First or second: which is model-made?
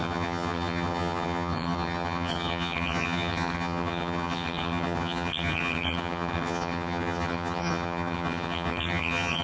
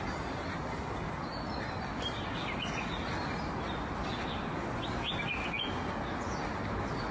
first